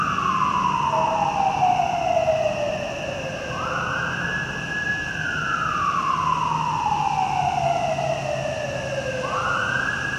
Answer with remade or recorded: recorded